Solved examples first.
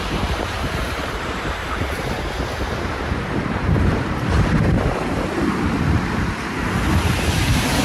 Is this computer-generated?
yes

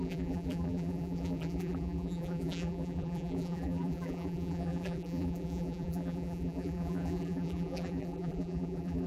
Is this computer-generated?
yes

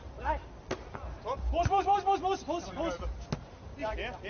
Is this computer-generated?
no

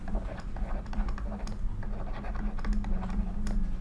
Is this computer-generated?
no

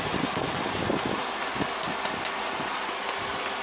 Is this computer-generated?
no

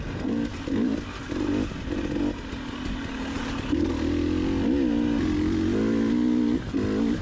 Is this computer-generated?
no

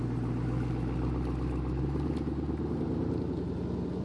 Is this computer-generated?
no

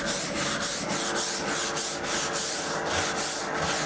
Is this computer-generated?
no